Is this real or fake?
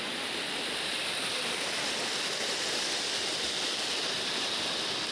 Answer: real